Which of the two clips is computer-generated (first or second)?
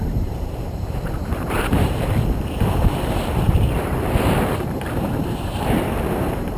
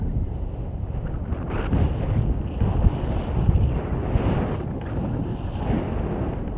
first